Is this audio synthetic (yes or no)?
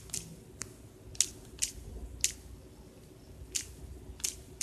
no